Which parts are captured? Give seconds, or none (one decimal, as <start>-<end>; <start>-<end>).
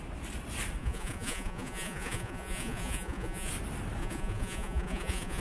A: 0.0-0.8; 3.5-4.0